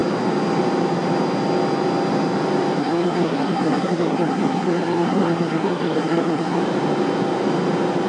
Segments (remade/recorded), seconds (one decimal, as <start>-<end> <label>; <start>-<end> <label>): 0.0-2.8 recorded; 2.8-6.6 remade; 6.6-8.1 recorded